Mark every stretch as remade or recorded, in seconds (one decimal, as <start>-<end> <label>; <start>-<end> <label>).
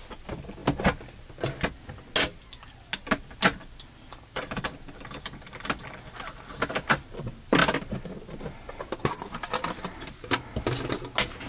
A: 0.0-11.5 recorded